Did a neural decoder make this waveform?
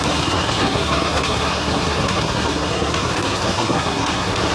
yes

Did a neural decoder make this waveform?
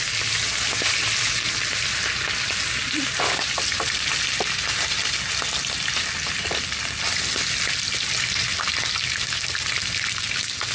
no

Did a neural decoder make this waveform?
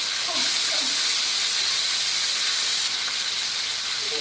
no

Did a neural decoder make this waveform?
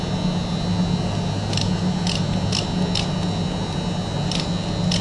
no